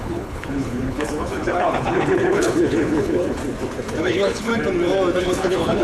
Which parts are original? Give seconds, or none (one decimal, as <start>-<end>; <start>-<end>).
3.4-4.0; 4.5-5.2